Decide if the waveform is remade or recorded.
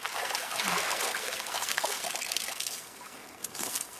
remade